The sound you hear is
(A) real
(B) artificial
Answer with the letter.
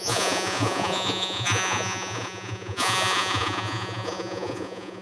B